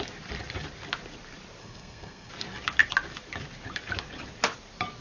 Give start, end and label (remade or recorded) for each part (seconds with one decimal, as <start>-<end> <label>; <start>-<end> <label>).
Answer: 0.0-1.6 recorded; 1.6-2.3 remade; 2.3-5.0 recorded